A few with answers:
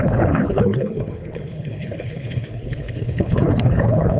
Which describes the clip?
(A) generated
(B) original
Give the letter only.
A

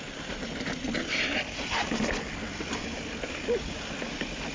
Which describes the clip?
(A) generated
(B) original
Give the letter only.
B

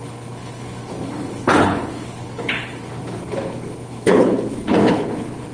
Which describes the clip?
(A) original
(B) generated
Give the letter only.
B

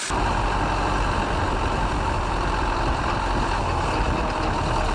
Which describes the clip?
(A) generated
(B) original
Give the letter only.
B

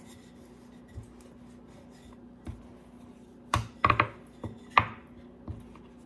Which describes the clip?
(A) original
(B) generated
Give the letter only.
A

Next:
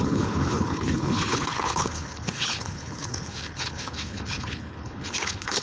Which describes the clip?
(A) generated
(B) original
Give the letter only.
A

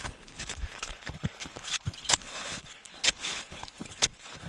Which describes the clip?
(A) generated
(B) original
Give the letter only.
A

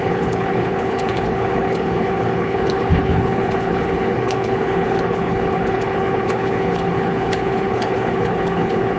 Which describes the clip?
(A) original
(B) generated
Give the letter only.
B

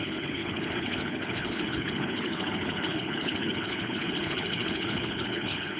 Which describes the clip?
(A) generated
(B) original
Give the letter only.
A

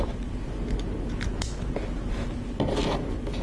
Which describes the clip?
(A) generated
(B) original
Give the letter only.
B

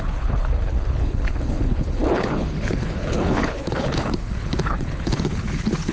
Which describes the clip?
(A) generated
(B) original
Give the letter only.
A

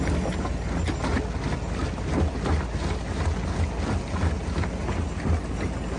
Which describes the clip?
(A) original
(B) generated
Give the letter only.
A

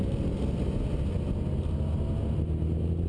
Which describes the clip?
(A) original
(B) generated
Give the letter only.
A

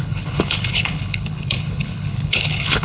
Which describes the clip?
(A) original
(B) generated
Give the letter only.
B